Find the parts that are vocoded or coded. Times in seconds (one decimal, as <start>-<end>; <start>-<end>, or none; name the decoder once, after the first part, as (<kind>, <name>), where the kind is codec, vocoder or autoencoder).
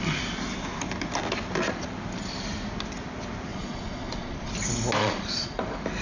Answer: 3.5-4.5 (vocoder, Vocos); 5.0-5.6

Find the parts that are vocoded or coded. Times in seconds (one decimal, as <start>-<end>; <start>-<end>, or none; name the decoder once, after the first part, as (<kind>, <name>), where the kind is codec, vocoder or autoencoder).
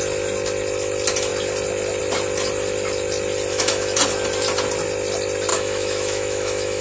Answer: 3.5-4.0 (autoencoder, DAC-VAE); 5.5-6.8